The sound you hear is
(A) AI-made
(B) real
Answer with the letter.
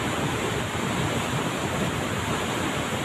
B